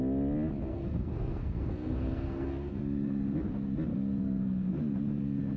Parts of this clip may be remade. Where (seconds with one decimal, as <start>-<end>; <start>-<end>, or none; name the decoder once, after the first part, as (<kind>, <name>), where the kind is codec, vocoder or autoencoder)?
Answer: 0.7-2.8 (codec, SNAC); 4.2-4.7